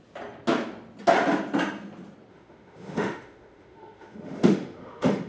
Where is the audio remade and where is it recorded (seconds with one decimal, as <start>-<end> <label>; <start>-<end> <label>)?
0.0-2.3 recorded; 2.3-5.3 remade